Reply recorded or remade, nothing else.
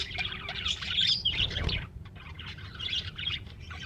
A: remade